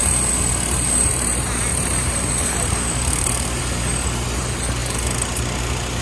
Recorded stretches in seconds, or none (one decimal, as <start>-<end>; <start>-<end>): 0.0-1.7; 3.6-6.0